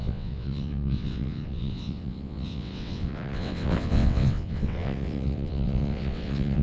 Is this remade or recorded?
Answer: remade